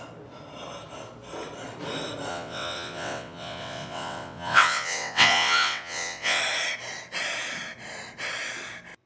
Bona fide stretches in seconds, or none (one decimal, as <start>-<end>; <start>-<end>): 0.0-2.3; 6.4-9.1